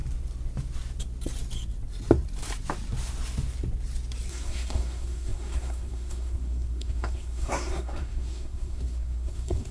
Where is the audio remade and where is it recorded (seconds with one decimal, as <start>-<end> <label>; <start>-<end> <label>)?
0.0-4.3 recorded; 4.3-9.7 remade